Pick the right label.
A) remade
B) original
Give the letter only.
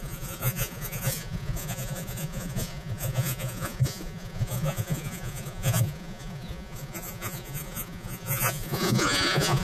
A